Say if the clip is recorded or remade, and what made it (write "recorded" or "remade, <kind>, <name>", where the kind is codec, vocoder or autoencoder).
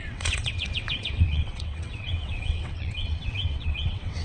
remade, vocoder, WaveNeXt